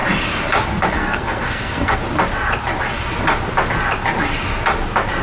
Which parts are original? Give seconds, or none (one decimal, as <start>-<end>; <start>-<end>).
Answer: 0.0-0.9; 2.0-5.2